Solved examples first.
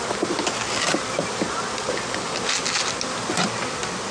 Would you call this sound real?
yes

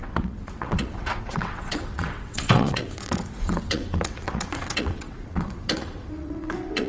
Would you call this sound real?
no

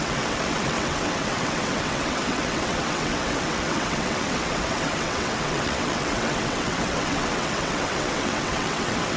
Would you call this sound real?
no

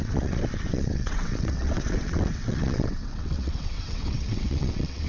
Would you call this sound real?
no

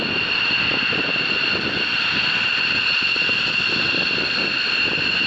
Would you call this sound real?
yes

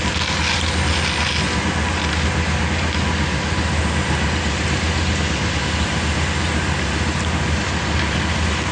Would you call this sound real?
yes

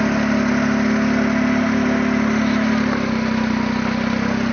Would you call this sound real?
yes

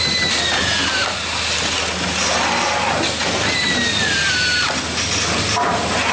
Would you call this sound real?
yes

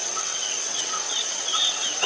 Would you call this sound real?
no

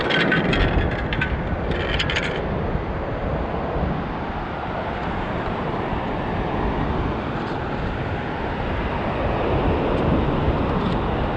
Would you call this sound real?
yes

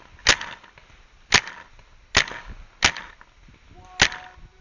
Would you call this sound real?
yes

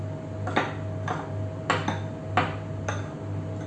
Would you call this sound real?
yes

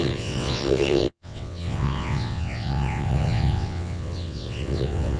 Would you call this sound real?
no